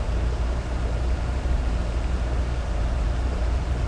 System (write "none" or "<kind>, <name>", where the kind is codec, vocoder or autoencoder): vocoder, BigVGAN v2